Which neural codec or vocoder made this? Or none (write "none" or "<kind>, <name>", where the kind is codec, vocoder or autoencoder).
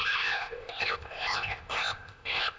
codec, ZipCodec